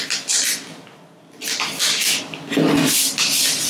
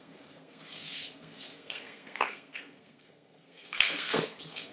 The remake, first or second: second